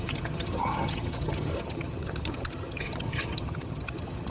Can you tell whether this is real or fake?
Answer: fake